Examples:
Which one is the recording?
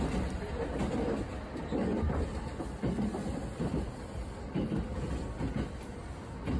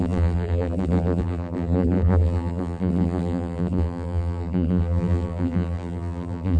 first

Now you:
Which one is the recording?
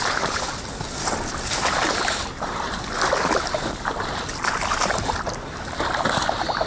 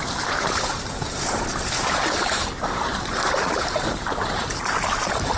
first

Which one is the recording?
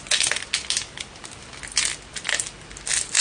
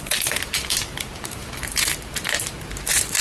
first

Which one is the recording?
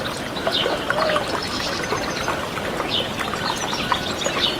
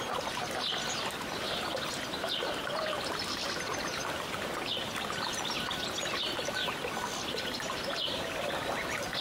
first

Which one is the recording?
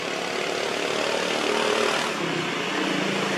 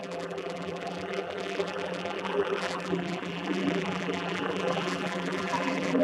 first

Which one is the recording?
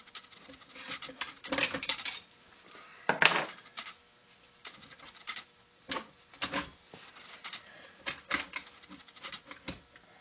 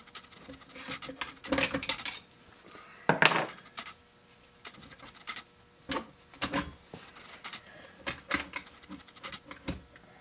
second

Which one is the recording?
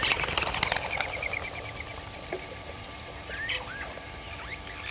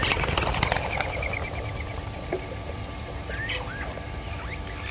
second